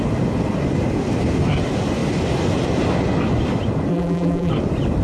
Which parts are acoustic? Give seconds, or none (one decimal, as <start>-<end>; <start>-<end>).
0.0-3.9; 4.5-5.0